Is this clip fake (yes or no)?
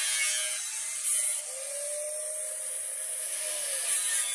no